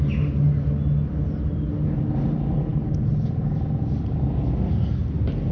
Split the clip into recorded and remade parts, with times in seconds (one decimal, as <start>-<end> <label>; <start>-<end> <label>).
0.0-5.5 recorded